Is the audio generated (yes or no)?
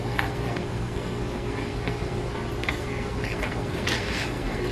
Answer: yes